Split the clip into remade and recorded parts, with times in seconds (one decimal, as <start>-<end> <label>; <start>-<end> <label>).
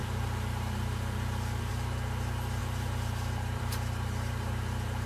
0.0-1.7 remade; 1.7-2.6 recorded; 2.6-5.1 remade